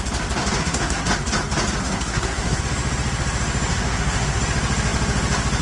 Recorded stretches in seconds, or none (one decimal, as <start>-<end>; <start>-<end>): 0.0-0.6; 1.1-1.8; 2.6-3.7; 4.4-5.6